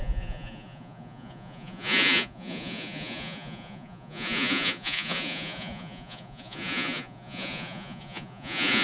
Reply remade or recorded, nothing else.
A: remade